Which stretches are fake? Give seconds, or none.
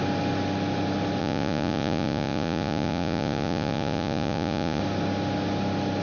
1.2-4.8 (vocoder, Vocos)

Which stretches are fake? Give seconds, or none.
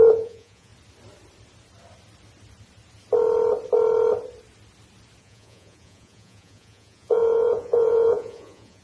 0.0-0.7 (vocoder, Vocos); 5.2-8.8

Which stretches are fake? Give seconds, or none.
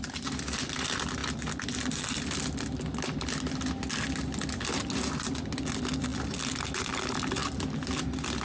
none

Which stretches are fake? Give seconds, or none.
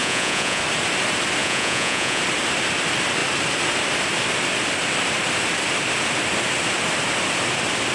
0.0-0.6 (vocoder, Vocos); 1.4-2.2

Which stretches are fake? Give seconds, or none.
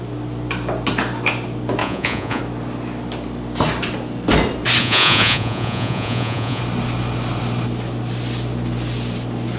1.8-2.4 (vocoder, Vocos); 4.8-6.6